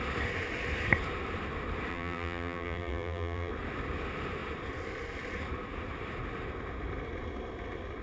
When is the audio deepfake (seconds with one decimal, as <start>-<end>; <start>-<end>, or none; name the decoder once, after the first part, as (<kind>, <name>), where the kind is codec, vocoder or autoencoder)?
1.9-3.5 (vocoder, BigVGAN v2)